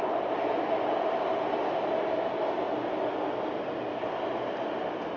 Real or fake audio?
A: real